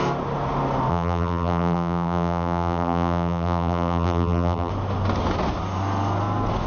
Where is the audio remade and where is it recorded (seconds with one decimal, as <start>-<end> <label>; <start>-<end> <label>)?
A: 0.0-0.9 recorded; 0.9-4.7 remade; 4.7-6.7 recorded